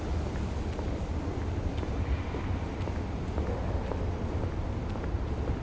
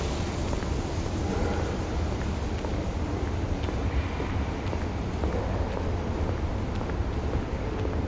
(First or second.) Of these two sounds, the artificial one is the first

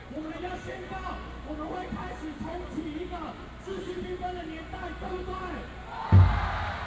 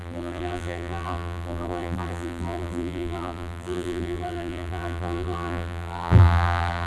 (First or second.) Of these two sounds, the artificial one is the second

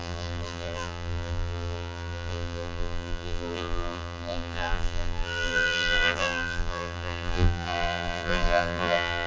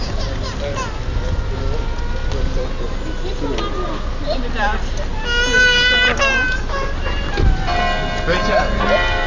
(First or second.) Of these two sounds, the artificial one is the first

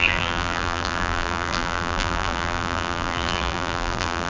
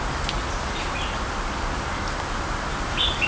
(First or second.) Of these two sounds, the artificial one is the first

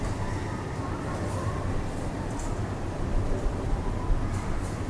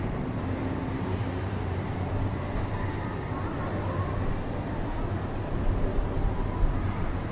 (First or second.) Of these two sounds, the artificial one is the first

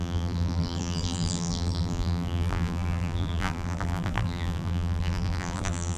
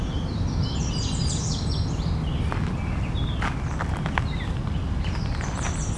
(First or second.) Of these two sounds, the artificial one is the first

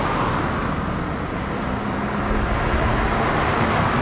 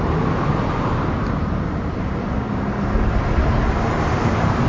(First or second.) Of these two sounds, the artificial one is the second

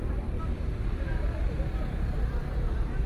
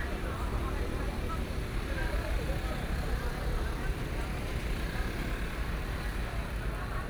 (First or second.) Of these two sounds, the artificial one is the second